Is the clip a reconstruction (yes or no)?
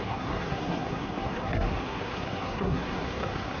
yes